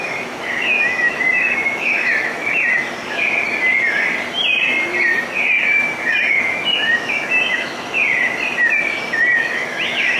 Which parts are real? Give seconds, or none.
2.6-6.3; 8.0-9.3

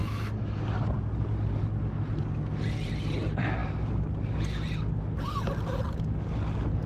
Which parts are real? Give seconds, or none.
0.6-6.9